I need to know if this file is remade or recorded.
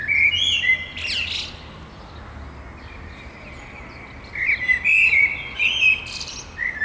recorded